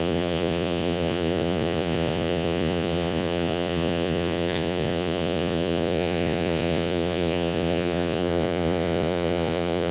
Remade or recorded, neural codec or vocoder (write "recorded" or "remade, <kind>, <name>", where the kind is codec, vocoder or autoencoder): remade, vocoder, Vocos